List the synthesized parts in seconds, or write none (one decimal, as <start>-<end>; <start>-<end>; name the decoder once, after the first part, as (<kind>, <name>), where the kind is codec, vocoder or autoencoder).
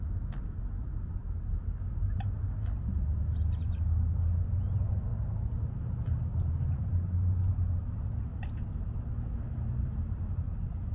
1.2-2.5 (vocoder, BigVGAN v2)